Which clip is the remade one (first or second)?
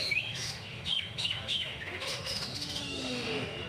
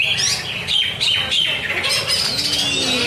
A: first